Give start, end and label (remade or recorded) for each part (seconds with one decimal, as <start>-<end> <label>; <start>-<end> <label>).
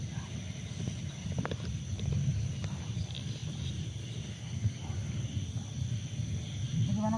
0.0-7.2 recorded